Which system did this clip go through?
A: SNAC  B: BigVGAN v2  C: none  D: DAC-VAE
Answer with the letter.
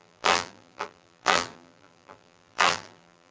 B